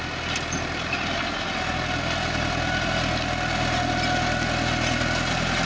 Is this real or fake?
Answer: real